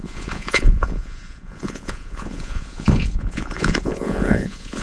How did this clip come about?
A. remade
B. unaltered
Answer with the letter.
A